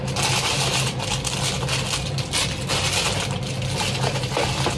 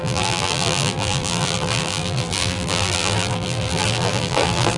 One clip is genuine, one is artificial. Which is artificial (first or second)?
second